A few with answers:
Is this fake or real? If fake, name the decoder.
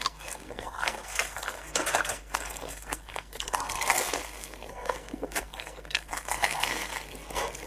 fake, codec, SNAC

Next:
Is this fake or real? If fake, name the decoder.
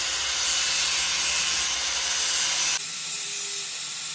real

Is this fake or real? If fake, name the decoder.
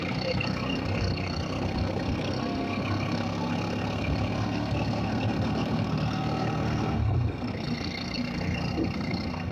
fake, codec, SNAC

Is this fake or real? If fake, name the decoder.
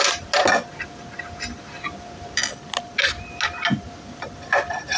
real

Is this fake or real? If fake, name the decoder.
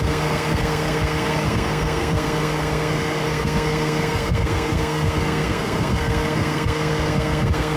fake, codec, SNAC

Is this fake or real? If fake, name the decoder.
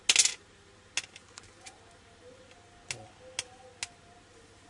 real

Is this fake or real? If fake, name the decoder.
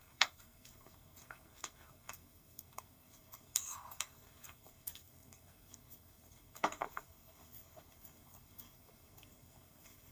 fake, codec, SNAC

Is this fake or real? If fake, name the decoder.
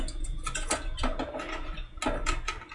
real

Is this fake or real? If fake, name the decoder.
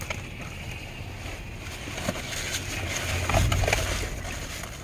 real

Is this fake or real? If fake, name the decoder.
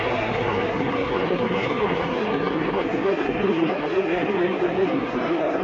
fake, codec, SNAC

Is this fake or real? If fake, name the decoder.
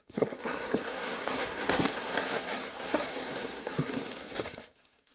fake, codec, SNAC